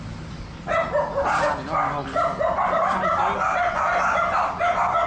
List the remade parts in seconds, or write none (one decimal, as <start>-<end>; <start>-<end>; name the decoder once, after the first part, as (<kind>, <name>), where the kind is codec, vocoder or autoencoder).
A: none